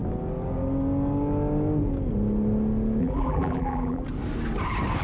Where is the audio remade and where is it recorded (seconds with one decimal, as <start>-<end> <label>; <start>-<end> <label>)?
0.0-3.0 recorded; 3.0-4.0 remade; 4.0-5.0 recorded